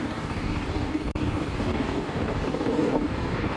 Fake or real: fake